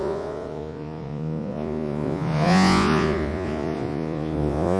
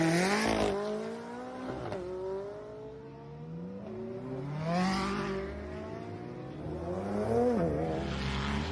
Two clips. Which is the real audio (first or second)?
second